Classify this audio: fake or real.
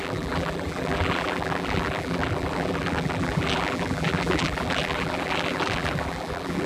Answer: fake